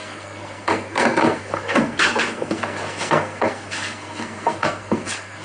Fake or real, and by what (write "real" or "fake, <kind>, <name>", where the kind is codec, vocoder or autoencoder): fake, codec, SNAC